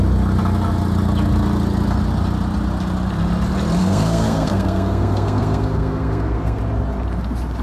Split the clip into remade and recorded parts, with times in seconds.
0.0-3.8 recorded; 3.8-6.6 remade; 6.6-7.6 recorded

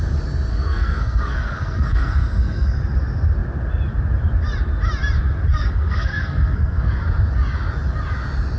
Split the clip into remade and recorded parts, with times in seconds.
0.0-0.5 recorded; 0.5-2.8 remade; 2.8-5.5 recorded; 5.5-6.9 remade; 6.9-8.6 recorded

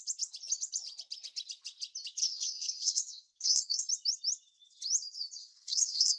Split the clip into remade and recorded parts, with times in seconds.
0.0-2.2 recorded; 2.2-3.9 remade; 3.9-5.4 recorded; 5.4-6.2 remade

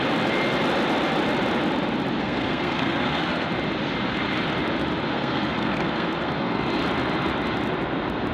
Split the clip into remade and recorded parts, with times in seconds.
0.0-2.2 recorded; 2.2-3.5 remade; 3.5-5.1 recorded; 5.1-6.6 remade; 6.6-8.3 recorded